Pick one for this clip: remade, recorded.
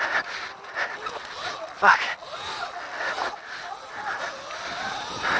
recorded